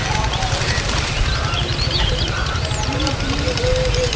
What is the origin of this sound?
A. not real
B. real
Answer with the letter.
A